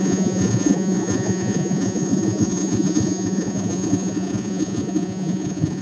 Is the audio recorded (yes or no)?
no